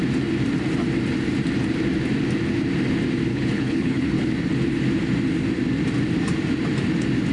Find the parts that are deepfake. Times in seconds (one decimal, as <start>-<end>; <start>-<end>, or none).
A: 3.3-4.3